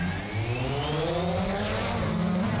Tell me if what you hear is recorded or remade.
recorded